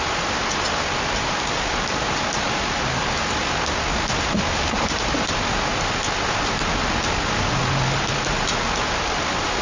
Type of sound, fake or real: real